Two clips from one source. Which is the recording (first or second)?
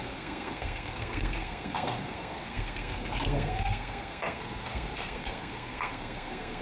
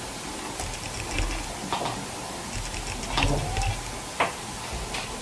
second